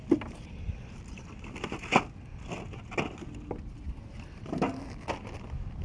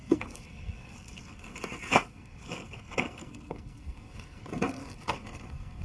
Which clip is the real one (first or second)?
first